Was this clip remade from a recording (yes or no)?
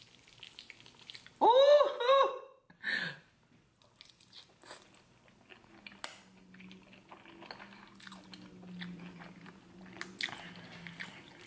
no